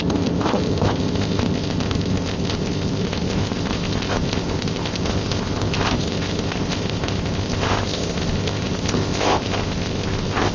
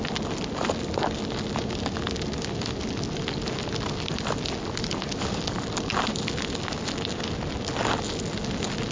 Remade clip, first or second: first